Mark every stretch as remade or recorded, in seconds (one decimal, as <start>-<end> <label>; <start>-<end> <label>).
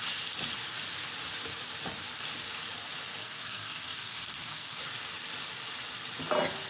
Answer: 0.0-3.2 recorded; 3.2-4.8 remade; 4.8-6.7 recorded